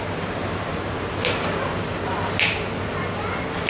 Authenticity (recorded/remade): recorded